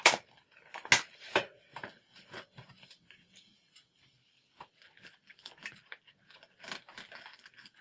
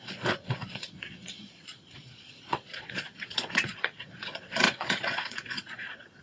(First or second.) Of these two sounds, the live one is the first